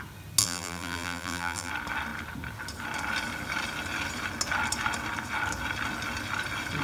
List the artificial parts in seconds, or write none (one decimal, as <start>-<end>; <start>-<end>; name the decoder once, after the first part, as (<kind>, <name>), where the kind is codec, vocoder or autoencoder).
0.4-1.7 (vocoder, BigVGAN v2)